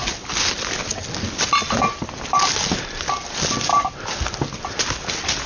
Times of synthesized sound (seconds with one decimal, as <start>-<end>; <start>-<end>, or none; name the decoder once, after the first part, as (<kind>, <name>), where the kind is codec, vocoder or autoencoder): none